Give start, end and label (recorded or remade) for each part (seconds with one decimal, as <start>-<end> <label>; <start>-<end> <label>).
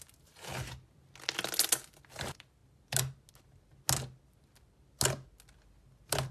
0.0-6.3 recorded